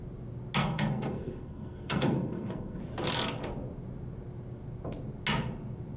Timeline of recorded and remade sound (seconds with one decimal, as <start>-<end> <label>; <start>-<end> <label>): 0.0-0.6 recorded; 0.6-2.8 remade; 2.8-6.0 recorded